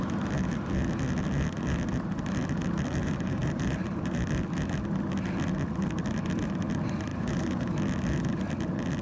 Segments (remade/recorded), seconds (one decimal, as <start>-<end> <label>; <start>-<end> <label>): 0.0-3.0 recorded; 3.0-4.2 remade; 4.2-7.1 recorded; 7.1-7.8 remade; 7.8-9.0 recorded